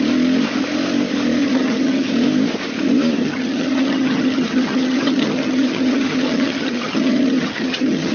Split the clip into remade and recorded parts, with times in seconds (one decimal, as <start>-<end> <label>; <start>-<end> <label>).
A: 0.0-1.4 recorded; 1.4-2.1 remade; 2.1-3.2 recorded; 3.2-8.1 remade